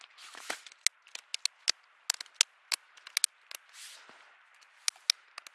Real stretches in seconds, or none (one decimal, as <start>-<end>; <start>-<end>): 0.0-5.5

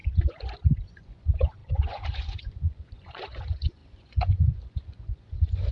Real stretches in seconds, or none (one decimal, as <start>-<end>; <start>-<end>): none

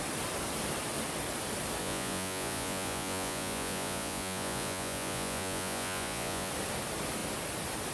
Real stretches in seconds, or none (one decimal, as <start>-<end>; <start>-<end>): 0.0-1.8; 6.5-7.9